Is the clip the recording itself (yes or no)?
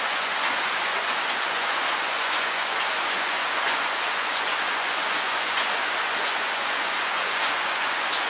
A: no